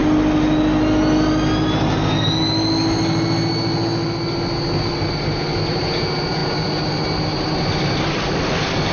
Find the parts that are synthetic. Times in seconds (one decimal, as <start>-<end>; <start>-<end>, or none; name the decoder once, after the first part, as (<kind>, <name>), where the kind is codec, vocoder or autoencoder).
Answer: none